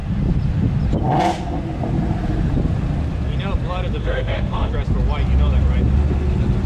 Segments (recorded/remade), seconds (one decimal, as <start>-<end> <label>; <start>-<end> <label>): 0.0-4.0 recorded; 4.0-4.7 remade; 4.7-6.7 recorded